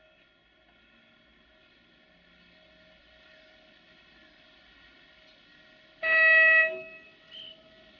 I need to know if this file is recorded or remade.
recorded